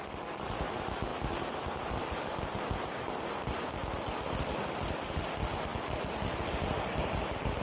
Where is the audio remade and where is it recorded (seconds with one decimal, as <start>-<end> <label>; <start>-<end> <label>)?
0.0-7.6 recorded